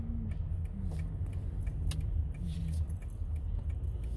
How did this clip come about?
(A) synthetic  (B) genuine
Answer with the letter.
B